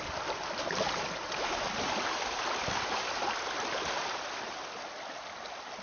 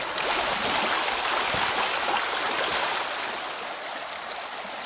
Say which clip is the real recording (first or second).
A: second